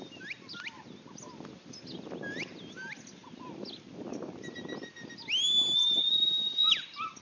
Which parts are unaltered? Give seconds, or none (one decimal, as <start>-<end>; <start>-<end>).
0.0-7.2